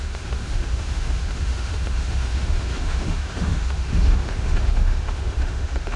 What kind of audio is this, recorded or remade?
remade